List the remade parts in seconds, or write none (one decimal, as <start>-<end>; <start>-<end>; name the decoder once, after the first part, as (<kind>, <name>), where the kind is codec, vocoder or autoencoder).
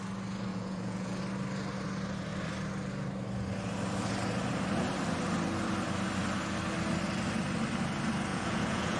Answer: 0.5-1.2 (vocoder, Vocos); 8.3-9.0